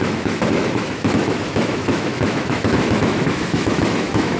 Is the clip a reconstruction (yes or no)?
yes